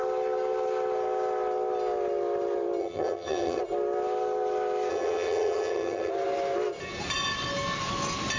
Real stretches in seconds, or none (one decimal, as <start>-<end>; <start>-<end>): 0.0-2.8; 3.6-4.9; 6.1-8.4